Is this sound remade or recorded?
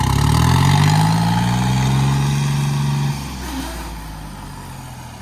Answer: recorded